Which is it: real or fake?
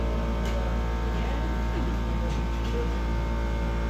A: real